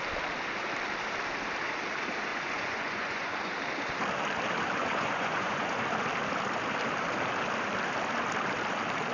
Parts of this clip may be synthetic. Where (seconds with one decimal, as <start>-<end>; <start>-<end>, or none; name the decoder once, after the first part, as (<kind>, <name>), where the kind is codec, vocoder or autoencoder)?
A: 2.3-3.5 (vocoder, Vocos); 4.8-5.8